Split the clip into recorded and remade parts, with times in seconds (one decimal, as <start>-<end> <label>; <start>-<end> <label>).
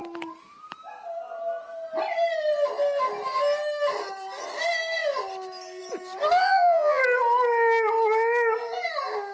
0.0-6.4 recorded; 6.4-7.0 remade; 7.0-9.3 recorded